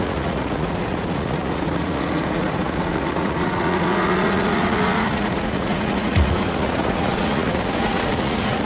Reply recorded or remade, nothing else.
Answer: remade